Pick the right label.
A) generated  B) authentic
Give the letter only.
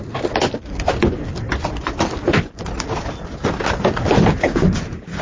B